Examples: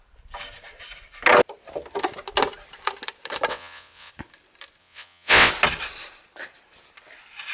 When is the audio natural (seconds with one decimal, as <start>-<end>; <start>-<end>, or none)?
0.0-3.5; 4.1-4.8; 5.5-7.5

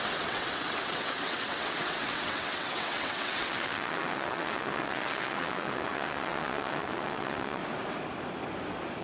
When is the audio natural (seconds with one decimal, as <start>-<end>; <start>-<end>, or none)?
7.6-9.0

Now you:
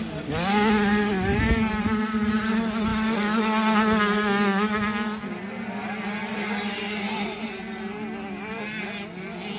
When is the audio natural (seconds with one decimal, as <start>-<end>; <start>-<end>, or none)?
0.0-9.6